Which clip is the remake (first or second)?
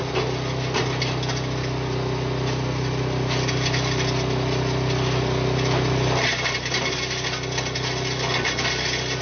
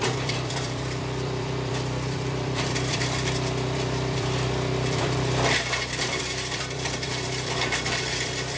second